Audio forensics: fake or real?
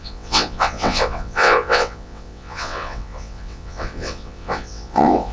fake